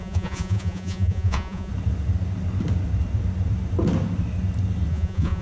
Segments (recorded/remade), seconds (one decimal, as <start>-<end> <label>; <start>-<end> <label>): 0.0-1.7 remade; 1.7-4.9 recorded; 4.9-5.4 remade